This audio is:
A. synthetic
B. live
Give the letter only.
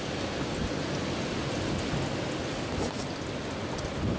B